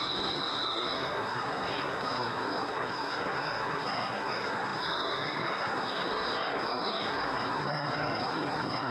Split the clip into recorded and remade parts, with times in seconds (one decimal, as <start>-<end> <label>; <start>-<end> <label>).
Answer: 0.0-8.9 remade